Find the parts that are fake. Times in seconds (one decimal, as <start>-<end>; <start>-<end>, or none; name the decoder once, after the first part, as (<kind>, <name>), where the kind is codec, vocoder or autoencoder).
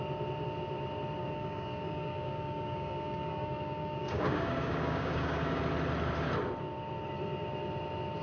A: 1.2-5.6 (codec, DAC)